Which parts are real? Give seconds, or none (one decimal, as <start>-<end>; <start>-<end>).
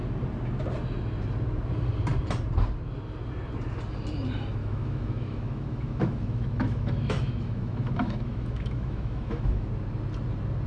0.0-4.6; 9.7-10.7